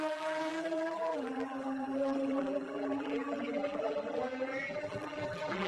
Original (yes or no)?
no